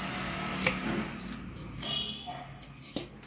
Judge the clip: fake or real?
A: real